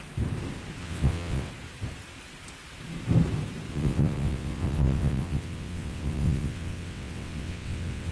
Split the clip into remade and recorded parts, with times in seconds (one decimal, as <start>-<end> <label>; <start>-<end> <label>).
0.0-0.8 recorded; 0.8-1.5 remade; 1.5-3.7 recorded; 3.7-8.1 remade

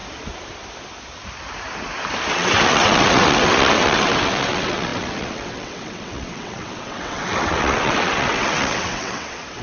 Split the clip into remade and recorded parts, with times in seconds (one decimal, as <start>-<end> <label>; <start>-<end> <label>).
0.0-2.3 recorded; 2.3-9.6 remade

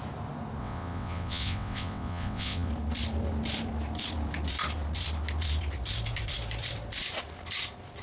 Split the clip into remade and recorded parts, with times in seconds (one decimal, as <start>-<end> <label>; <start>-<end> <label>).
0.0-0.6 recorded; 0.6-2.7 remade; 2.7-8.0 recorded

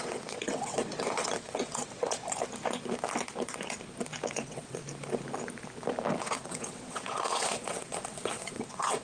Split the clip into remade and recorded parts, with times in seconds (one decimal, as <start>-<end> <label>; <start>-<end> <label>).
0.0-2.2 remade; 2.2-4.3 recorded; 4.3-4.8 remade; 4.8-6.2 recorded; 6.2-9.0 remade

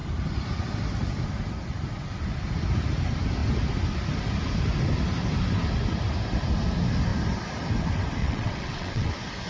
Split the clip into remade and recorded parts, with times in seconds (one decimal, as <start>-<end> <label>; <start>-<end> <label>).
0.0-8.2 recorded; 8.2-9.1 remade; 9.1-9.5 recorded